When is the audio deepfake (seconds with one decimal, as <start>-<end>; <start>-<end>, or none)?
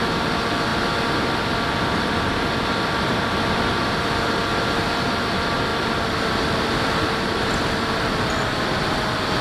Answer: none